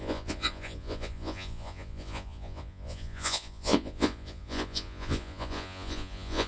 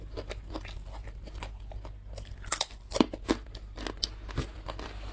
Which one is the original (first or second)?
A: second